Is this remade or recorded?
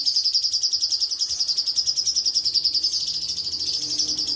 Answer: recorded